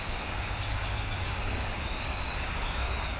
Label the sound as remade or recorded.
remade